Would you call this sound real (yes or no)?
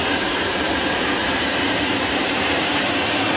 no